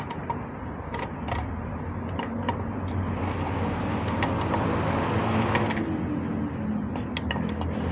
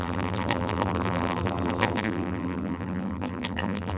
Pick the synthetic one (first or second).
second